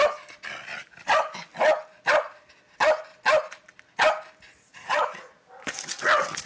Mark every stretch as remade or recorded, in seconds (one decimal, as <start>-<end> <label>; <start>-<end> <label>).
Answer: 0.0-4.7 recorded; 4.7-5.4 remade; 5.4-6.5 recorded